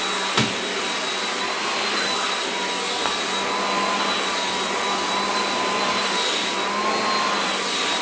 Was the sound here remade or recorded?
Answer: recorded